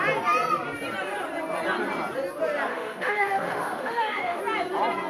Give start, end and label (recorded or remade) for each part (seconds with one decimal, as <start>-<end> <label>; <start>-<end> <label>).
0.0-2.7 recorded; 2.7-4.4 remade; 4.4-5.1 recorded